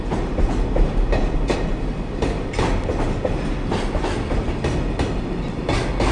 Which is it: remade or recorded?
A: recorded